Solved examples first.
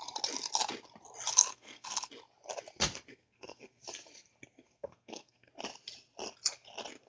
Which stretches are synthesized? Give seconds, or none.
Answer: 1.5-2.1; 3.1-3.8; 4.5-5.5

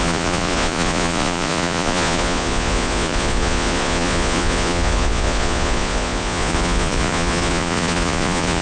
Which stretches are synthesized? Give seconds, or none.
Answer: 0.0-8.6